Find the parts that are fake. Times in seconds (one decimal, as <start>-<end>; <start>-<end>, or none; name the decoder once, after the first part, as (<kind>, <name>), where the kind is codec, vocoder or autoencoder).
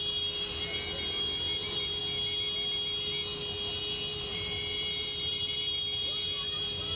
4.1-5.6 (vocoder, BigVGAN v2)